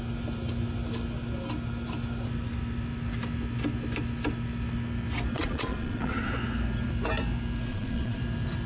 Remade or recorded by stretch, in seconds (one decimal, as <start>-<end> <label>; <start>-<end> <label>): 0.0-5.3 recorded; 5.3-6.3 remade; 6.3-7.7 recorded; 7.7-8.2 remade; 8.2-8.7 recorded